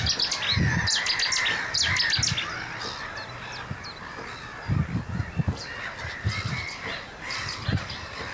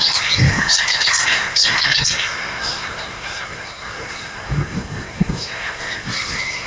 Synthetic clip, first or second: second